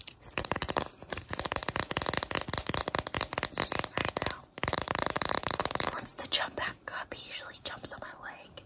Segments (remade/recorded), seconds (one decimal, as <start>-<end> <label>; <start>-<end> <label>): 0.0-1.6 remade; 1.6-4.4 recorded; 4.4-8.7 remade